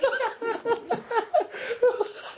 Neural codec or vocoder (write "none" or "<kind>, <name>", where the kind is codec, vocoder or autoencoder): none